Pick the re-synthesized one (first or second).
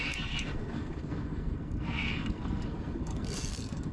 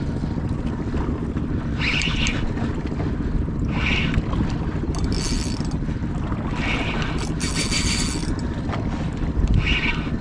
first